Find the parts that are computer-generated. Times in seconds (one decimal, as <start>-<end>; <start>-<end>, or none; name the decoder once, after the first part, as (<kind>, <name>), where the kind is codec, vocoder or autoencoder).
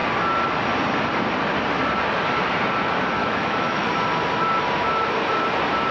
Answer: 3.2-3.9 (autoencoder, DAC-VAE)